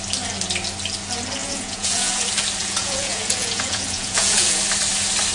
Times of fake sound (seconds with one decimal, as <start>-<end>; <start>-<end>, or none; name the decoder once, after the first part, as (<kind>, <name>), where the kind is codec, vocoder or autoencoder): 1.4-2.2 (vocoder, Vocos); 2.6-4.6